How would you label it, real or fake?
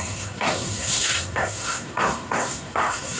fake